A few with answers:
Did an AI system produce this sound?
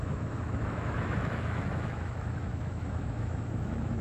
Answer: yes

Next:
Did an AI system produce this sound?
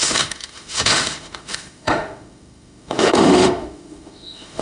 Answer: yes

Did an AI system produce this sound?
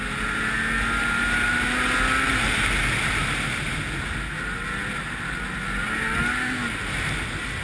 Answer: no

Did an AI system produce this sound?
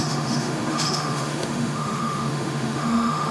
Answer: yes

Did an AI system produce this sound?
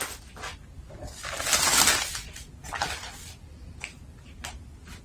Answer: no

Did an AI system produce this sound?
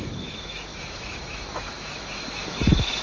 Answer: yes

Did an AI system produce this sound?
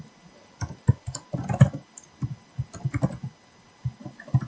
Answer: no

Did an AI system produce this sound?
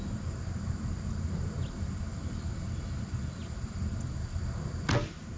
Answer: no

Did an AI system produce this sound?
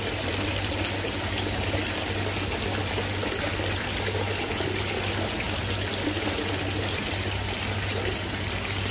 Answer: no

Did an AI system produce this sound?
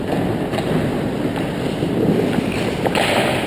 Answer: no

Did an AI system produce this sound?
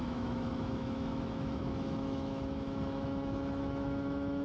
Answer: yes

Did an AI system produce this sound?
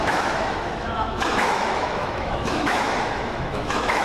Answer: yes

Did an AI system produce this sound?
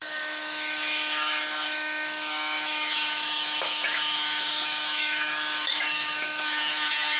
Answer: yes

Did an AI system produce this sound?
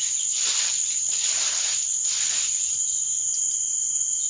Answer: no